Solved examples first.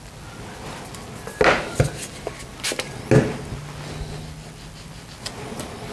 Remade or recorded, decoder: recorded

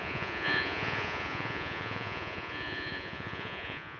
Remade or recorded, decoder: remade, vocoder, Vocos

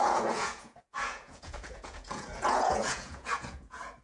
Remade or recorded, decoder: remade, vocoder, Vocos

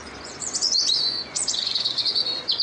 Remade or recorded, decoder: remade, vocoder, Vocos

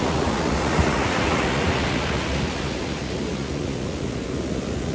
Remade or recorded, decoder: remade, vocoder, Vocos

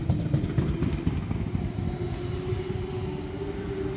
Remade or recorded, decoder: recorded